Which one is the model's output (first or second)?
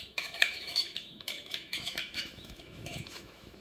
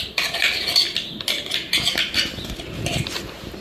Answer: first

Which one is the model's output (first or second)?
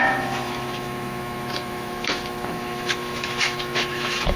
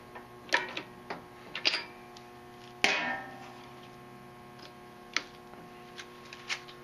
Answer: first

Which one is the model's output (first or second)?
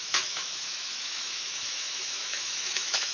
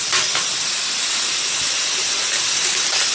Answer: first